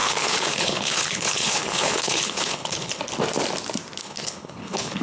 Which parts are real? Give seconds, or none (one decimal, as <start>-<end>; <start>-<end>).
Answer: 3.0-4.0